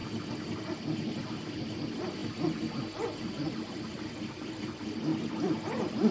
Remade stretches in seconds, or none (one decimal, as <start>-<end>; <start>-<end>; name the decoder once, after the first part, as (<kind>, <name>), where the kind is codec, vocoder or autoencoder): 0.0-1.2 (vocoder, BigVGAN v2); 5.1-6.1